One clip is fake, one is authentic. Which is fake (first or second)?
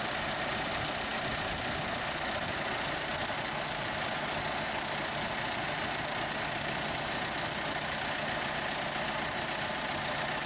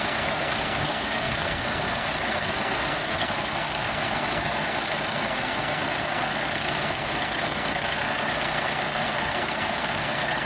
second